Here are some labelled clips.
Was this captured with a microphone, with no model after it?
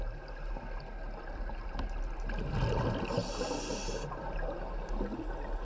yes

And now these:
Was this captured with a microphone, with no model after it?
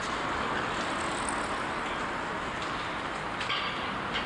yes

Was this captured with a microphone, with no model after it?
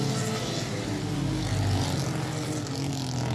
yes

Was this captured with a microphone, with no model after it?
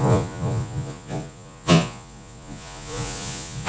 no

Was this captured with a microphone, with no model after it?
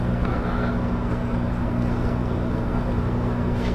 no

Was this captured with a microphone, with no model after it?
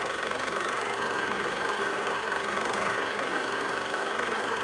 no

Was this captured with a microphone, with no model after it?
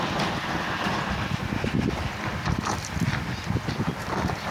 yes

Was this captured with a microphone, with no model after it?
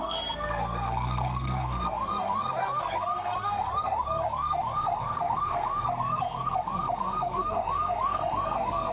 no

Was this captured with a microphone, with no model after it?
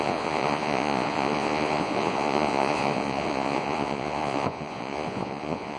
no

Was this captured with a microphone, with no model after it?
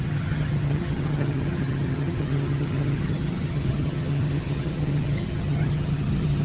no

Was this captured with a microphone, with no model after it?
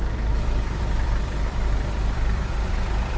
no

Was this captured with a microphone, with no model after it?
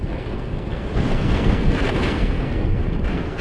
no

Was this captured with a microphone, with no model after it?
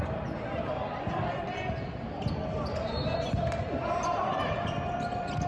yes